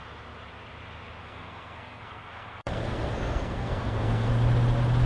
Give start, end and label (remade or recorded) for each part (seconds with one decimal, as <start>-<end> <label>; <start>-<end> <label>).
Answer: 0.0-1.2 recorded; 1.2-4.3 remade; 4.3-5.1 recorded